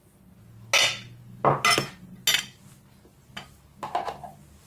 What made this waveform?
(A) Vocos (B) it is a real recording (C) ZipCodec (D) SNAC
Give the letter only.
B